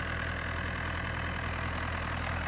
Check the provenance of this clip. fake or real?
real